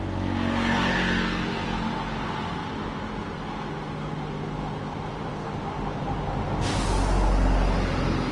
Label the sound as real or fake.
real